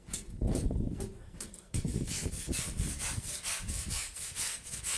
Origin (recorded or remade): remade